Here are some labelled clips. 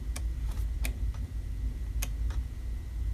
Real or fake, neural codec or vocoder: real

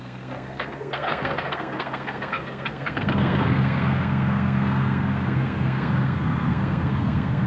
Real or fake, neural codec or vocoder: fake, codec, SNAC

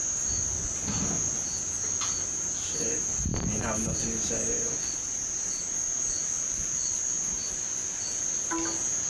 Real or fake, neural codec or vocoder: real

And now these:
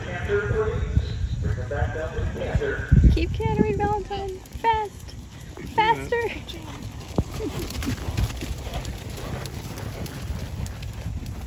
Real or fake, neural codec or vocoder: real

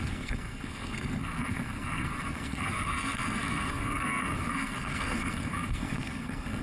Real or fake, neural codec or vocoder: fake, codec, SNAC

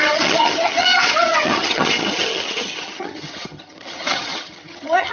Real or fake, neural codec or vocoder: fake, vocoder, HiFi-GAN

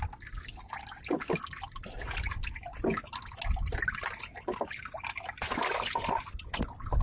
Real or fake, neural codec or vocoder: real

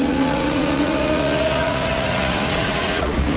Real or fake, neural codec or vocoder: fake, vocoder, Vocos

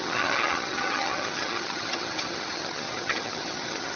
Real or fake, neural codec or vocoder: fake, vocoder, HiFi-GAN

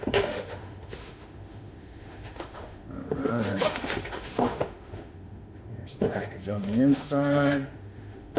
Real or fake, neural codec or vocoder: fake, autoencoder, DAC-VAE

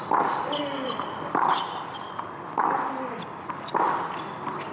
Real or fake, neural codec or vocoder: real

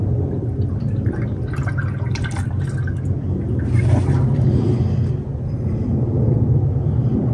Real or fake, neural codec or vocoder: real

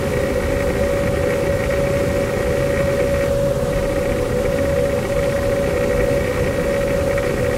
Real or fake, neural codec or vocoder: real